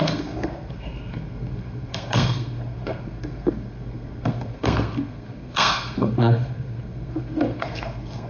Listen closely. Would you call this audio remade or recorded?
remade